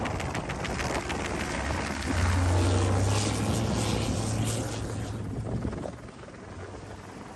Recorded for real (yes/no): yes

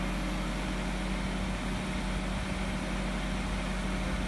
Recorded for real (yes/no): yes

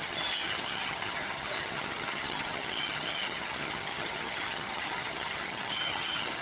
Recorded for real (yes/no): no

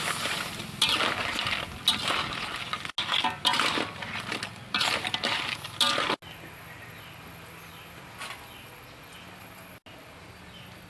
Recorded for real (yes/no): yes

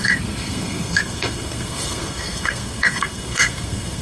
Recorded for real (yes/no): no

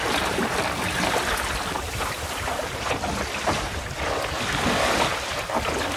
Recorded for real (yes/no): yes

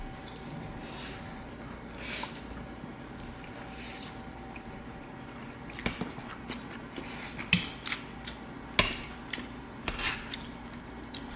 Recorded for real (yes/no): yes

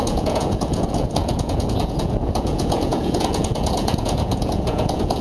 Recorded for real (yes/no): no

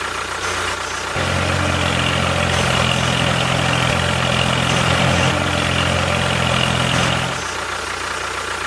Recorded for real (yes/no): yes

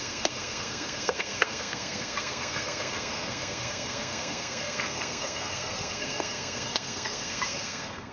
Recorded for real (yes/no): no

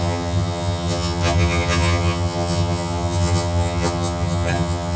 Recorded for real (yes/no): no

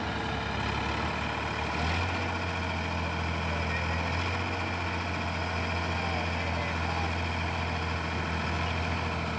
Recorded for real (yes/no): yes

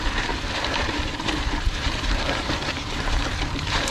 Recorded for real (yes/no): no